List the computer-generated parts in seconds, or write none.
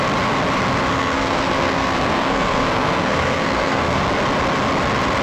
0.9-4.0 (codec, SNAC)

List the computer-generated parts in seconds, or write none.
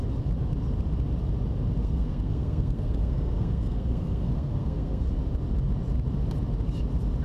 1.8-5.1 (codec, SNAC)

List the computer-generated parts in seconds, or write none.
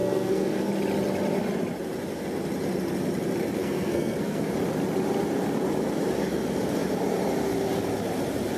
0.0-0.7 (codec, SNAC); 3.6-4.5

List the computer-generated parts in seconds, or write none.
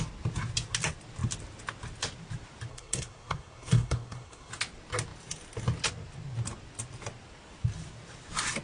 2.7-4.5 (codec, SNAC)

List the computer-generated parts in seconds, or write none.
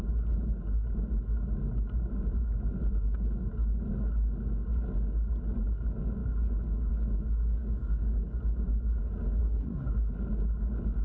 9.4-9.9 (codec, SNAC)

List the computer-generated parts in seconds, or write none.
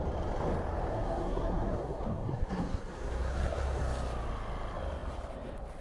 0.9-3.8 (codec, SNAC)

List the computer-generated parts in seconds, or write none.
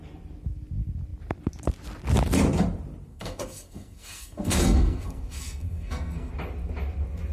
3.1-6.3 (codec, SNAC)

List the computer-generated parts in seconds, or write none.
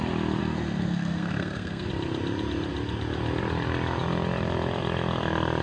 0.4-1.9 (codec, SNAC)